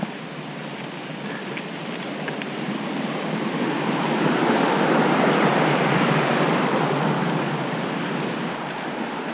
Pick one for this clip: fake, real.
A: real